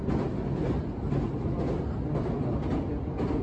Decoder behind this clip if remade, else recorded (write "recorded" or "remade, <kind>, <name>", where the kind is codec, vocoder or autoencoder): recorded